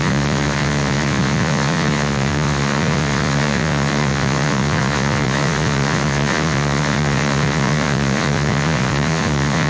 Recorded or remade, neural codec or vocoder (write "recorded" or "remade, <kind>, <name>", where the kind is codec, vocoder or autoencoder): remade, vocoder, Vocos